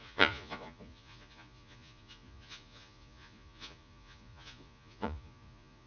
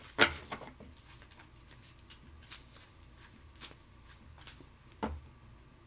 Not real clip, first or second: first